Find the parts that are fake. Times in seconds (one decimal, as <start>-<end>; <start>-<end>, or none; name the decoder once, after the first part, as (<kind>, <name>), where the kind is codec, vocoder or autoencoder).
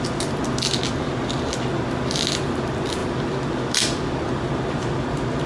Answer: none